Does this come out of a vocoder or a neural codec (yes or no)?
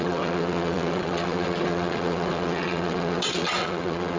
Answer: yes